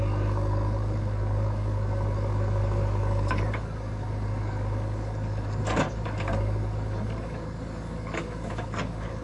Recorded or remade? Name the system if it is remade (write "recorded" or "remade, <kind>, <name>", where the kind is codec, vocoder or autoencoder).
remade, codec, DAC